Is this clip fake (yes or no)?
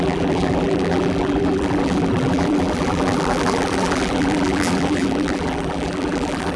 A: yes